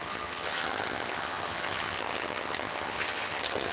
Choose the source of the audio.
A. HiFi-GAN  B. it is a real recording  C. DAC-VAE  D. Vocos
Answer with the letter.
A